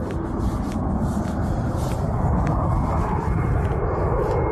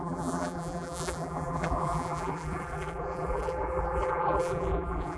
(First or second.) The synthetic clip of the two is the second